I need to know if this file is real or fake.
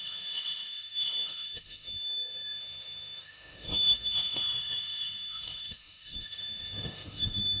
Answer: fake